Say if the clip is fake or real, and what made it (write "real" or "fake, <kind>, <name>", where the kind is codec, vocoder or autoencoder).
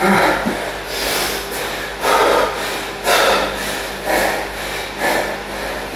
real